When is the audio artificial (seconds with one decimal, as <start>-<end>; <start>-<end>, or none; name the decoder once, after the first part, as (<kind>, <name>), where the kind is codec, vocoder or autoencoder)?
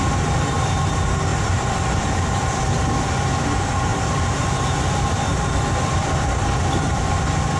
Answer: 1.3-2.6 (vocoder, BigVGAN v2); 3.9-7.0